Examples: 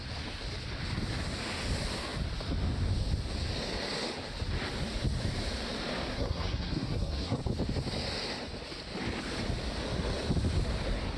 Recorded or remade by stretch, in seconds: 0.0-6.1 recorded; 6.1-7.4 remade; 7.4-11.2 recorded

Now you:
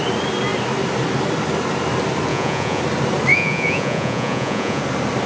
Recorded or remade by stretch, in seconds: 0.0-2.3 recorded; 2.3-2.8 remade; 2.8-3.3 recorded; 3.3-4.8 remade; 4.8-5.3 recorded

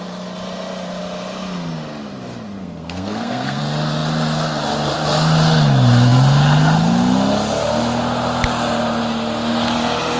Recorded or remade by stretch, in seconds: 0.0-2.6 recorded; 2.6-3.6 remade; 3.6-10.2 recorded

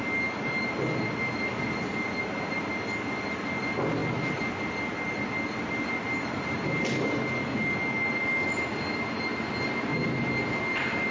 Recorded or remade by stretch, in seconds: 0.0-1.5 recorded; 1.5-2.7 remade; 2.7-11.1 recorded

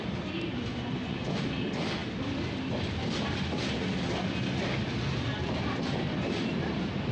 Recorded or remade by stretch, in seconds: 0.0-0.7 recorded; 0.7-1.4 remade; 1.4-7.1 recorded

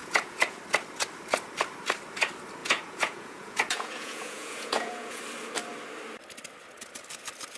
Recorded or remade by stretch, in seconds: 0.0-0.6 remade; 0.6-2.6 recorded; 2.6-5.2 remade; 5.2-7.6 recorded

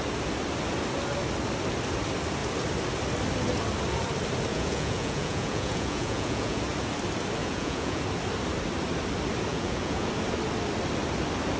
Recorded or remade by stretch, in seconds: 0.0-4.5 recorded; 4.5-6.6 remade; 6.6-7.4 recorded; 7.4-8.0 remade; 8.0-9.5 recorded; 9.5-10.1 remade; 10.1-11.6 recorded